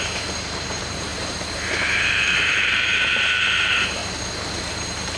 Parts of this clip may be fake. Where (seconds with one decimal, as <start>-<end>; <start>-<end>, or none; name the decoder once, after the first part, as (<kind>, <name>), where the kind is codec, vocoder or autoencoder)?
0.0-4.0 (vocoder, BigVGAN v2); 4.7-5.2